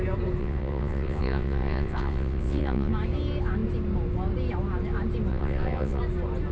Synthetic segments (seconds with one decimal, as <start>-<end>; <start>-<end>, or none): 0.4-2.9; 5.3-6.0

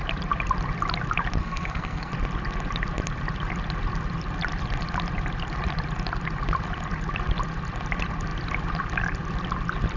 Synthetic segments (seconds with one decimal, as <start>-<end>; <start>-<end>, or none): 1.4-2.1

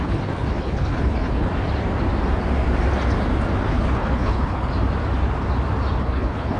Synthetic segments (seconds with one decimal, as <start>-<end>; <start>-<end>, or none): 0.0-1.5; 3.6-4.7; 6.0-6.6

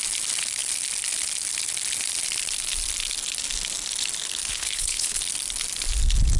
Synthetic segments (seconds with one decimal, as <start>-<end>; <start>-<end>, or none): 4.5-5.2

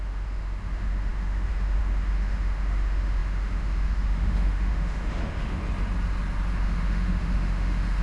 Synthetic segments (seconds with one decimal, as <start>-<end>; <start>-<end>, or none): 0.0-5.6; 6.5-8.0

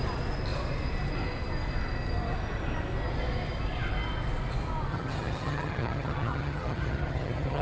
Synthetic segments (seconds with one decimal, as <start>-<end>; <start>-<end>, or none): 4.9-7.6

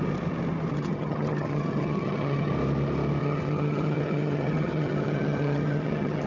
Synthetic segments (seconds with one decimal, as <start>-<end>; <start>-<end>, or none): 0.7-2.5; 3.2-6.3